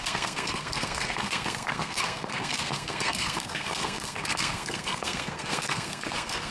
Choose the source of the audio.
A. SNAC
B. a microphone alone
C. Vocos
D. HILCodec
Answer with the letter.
A